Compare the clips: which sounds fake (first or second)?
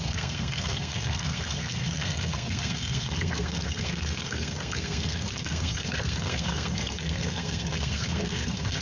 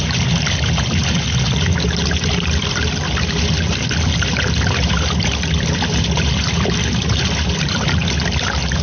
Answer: first